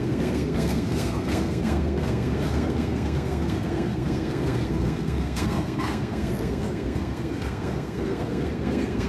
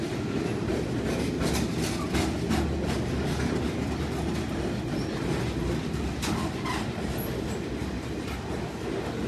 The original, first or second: second